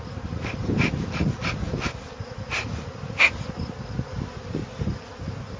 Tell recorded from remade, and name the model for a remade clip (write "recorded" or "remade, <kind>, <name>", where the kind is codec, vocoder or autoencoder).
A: recorded